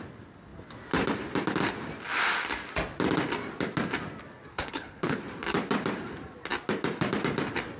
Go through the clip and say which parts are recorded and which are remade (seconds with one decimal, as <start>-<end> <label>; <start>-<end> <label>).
0.0-4.5 recorded; 4.5-5.2 remade; 5.2-7.8 recorded